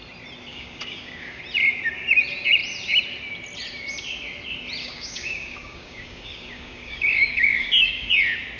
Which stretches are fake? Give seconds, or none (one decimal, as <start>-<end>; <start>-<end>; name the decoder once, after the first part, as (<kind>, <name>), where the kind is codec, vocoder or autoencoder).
0.5-1.4 (codec, DAC); 4.8-8.1